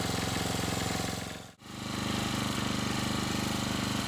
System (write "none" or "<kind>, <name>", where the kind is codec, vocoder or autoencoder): none